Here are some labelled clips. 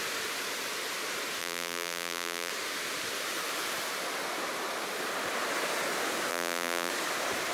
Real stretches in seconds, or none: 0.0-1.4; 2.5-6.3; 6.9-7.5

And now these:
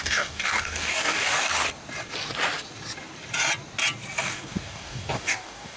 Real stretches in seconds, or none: 1.5-4.2

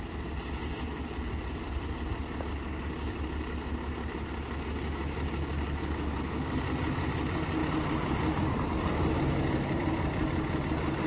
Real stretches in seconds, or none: 0.0-11.1

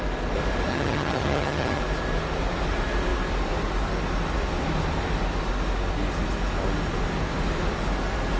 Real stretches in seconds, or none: 0.0-0.7; 1.8-8.4

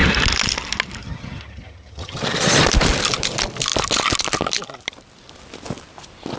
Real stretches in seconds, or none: 0.0-1.0; 2.2-6.4

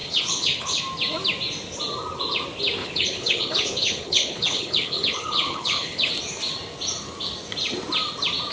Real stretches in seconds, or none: 0.8-2.8; 6.1-8.5

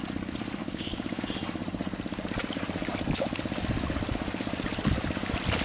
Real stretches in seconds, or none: 0.0-0.6; 1.2-5.6